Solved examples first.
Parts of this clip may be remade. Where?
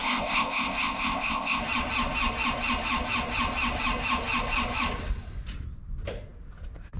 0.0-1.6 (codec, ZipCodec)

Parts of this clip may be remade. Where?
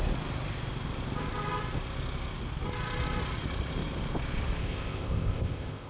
4.6-5.9 (codec, ZipCodec)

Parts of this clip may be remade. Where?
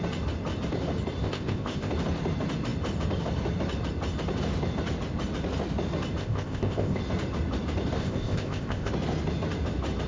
1.2-1.9 (codec, ZipCodec); 6.2-7.0; 8.0-8.9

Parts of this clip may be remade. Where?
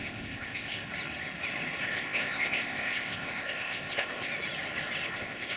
0.0-0.8 (codec, ZipCodec); 1.8-4.3; 5.1-5.6